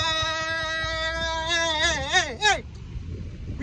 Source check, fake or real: real